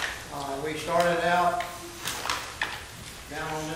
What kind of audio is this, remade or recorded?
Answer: recorded